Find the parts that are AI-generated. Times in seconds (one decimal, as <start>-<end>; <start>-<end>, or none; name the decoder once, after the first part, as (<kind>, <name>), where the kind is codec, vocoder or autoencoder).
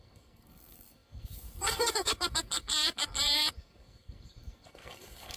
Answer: 0.0-5.4 (codec, SNAC)